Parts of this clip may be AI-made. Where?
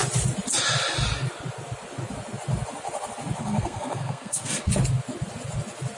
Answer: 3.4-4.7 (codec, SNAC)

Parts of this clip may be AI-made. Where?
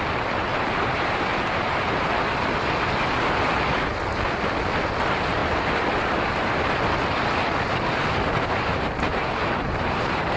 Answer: 0.5-2.1 (vocoder, BigVGAN v2); 9.1-10.4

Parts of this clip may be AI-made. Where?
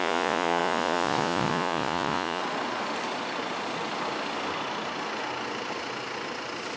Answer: 0.0-2.4 (vocoder, Vocos)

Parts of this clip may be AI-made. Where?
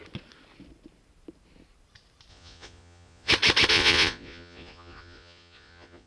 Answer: 2.3-3.3 (vocoder, Vocos); 3.7-6.1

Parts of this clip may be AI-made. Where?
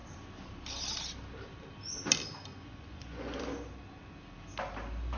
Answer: 2.5-3.4 (vocoder, Vocos)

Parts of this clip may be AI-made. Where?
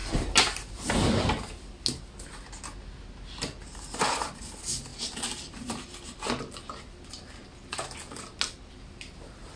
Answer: none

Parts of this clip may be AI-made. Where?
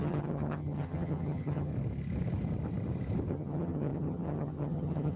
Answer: 0.0-1.7 (vocoder, HiFi-GAN); 3.3-5.2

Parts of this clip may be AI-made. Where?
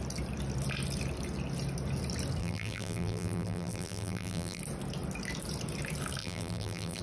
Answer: 2.4-4.6 (vocoder, BigVGAN v2); 6.2-7.0